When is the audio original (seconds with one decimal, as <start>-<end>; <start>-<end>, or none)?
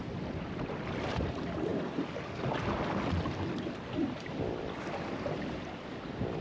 1.7-5.4